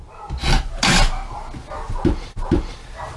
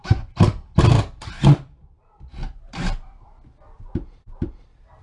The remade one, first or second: second